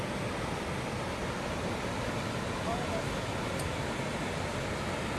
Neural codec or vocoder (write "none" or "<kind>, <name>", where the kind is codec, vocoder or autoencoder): none